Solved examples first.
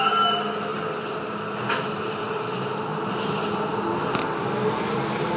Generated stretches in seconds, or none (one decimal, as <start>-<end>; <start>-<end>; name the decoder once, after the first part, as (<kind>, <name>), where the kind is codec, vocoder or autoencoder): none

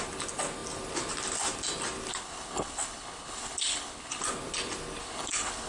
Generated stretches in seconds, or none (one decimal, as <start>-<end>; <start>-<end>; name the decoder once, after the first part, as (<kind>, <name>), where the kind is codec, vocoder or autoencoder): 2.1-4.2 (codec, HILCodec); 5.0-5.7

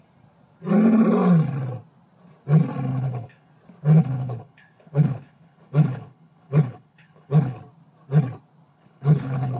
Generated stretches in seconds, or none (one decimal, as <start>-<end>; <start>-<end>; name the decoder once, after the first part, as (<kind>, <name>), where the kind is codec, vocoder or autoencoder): 2.9-3.5 (codec, HILCodec); 4.0-7.6; 8.7-9.6